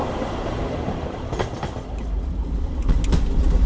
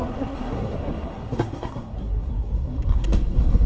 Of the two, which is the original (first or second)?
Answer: first